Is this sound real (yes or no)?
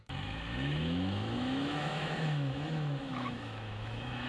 no